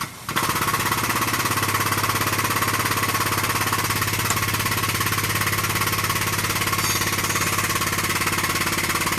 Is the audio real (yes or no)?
yes